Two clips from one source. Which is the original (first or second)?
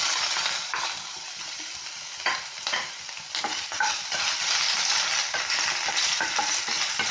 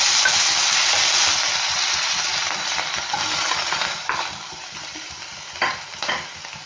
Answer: second